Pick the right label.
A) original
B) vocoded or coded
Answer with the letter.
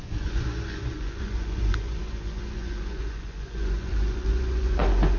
B